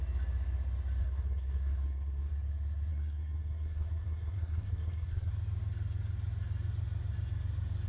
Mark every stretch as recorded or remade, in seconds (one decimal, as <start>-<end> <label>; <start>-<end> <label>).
0.0-1.0 recorded; 1.0-2.3 remade; 2.3-2.9 recorded; 2.9-5.3 remade; 5.3-7.9 recorded